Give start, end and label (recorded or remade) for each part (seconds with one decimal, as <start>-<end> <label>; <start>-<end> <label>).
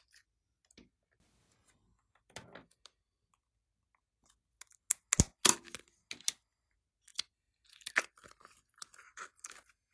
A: 0.0-9.9 recorded